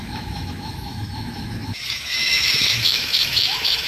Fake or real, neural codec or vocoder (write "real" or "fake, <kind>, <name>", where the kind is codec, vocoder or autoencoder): fake, autoencoder, DAC-VAE